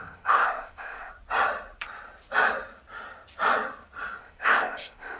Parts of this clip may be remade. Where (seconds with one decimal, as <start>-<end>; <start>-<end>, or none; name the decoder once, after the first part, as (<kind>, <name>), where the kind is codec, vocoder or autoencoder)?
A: 0.0-1.1 (codec, ZipCodec); 4.2-5.2

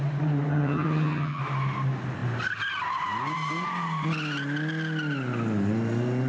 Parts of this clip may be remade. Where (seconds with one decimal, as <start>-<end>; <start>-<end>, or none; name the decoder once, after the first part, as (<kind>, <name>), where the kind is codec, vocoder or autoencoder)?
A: 0.5-1.4 (vocoder, HiFi-GAN)

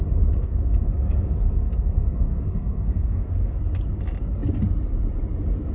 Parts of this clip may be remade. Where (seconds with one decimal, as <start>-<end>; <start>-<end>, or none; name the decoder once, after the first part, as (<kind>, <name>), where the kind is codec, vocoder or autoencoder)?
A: 0.4-3.6 (codec, SNAC)

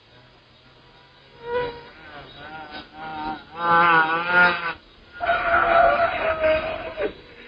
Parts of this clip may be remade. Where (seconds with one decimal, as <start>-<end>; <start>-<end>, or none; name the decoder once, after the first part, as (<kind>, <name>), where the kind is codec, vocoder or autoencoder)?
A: none